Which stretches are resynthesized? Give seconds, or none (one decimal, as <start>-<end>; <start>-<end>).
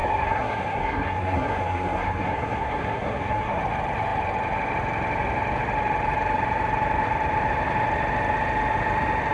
0.0-3.6